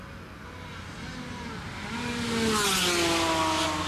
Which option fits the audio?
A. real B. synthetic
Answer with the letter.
A